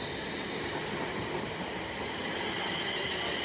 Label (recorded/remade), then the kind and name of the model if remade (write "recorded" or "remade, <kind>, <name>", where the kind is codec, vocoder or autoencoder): recorded